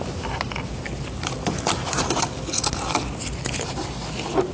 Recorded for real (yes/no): yes